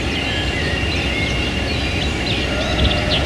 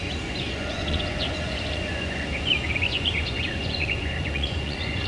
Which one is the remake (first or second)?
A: second